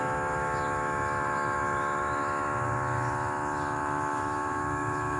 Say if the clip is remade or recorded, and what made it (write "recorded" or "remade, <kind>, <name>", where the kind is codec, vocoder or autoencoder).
remade, autoencoder, DAC-VAE